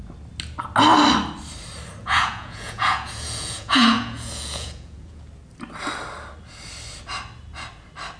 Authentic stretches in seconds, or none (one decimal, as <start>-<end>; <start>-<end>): 0.0-2.0; 5.2-8.2